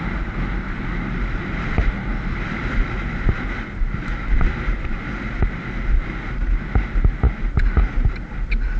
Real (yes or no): yes